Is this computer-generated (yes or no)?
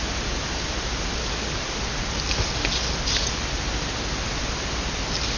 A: no